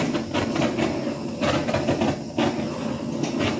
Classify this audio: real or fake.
real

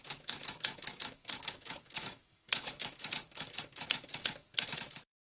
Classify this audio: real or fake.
fake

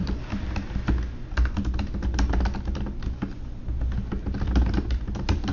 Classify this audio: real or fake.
real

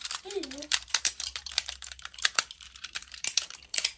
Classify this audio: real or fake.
fake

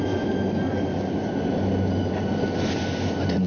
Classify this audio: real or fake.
real